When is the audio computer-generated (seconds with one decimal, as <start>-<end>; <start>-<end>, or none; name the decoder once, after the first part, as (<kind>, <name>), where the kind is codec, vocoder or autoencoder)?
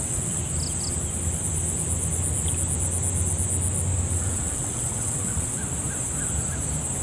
0.0-0.4 (vocoder, WaveNeXt); 4.1-5.6